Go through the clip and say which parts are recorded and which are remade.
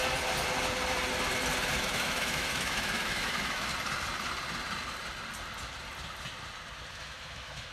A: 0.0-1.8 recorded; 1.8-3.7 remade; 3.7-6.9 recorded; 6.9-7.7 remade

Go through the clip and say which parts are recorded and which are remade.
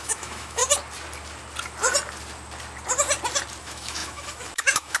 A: 0.0-0.6 remade; 0.6-3.6 recorded; 3.6-5.0 remade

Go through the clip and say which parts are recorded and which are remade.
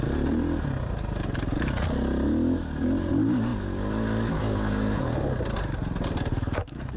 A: 0.0-6.3 recorded; 6.3-7.0 remade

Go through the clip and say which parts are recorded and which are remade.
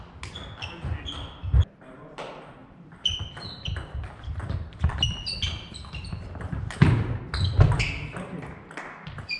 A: 0.0-2.6 recorded; 2.6-3.3 remade; 3.3-9.4 recorded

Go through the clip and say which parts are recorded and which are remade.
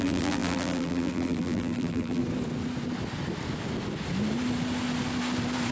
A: 0.0-2.2 remade; 2.2-5.7 recorded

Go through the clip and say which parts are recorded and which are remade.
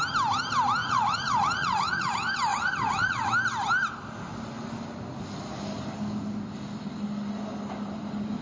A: 0.0-0.8 recorded; 0.8-2.1 remade; 2.1-2.5 recorded; 2.5-3.3 remade; 3.3-8.4 recorded